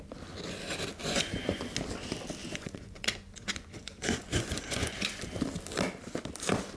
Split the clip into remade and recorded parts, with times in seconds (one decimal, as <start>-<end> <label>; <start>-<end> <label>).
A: 0.0-1.0 recorded; 1.0-1.6 remade; 1.6-2.4 recorded; 2.4-5.2 remade; 5.2-6.8 recorded

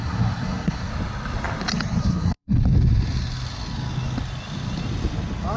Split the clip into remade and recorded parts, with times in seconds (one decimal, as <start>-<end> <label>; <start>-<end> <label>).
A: 0.0-0.9 remade; 0.9-2.0 recorded; 2.0-2.6 remade; 2.6-5.6 recorded

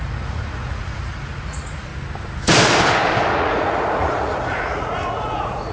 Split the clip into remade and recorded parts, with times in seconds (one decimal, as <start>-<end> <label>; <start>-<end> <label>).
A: 0.0-1.9 remade; 1.9-3.4 recorded; 3.4-5.7 remade